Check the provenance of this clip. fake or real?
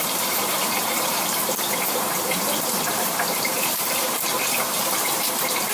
fake